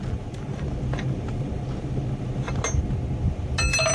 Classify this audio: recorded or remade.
recorded